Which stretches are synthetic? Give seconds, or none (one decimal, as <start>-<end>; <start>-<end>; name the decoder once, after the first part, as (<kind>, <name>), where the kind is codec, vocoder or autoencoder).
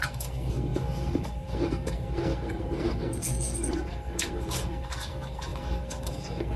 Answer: 0.0-6.6 (codec, SNAC)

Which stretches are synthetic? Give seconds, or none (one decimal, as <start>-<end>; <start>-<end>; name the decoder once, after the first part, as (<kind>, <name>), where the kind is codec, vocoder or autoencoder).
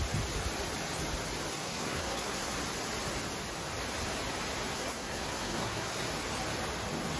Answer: 1.5-2.6 (codec, SNAC); 4.7-6.1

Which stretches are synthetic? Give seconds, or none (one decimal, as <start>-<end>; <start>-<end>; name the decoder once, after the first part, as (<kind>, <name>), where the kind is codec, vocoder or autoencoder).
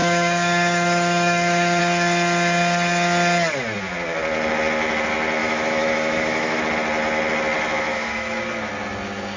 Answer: 0.0-1.8 (autoencoder, DAC-VAE); 5.4-6.6; 7.9-8.4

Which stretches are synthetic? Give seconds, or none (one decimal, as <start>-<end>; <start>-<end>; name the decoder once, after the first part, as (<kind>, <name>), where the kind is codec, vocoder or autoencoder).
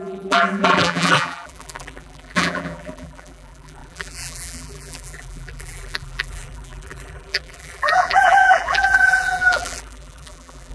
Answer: 0.0-10.7 (vocoder, BigVGAN v2)